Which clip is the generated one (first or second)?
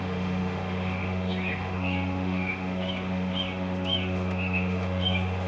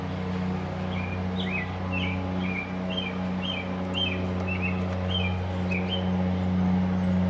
first